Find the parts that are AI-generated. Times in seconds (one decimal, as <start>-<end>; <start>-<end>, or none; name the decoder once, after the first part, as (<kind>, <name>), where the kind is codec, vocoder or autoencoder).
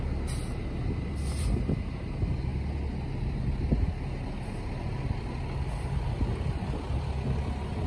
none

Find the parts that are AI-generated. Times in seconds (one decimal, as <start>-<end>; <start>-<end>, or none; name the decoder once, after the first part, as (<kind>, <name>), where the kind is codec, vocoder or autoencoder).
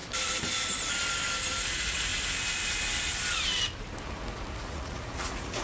1.6-2.1 (vocoder, Vocos); 4.6-5.6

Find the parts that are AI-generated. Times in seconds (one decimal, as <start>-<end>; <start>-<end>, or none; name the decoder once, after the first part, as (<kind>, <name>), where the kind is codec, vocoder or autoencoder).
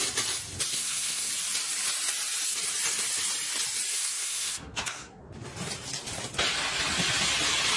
0.7-1.3 (codec, SNAC); 3.9-5.2